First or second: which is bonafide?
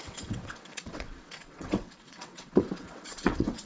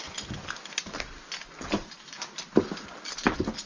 second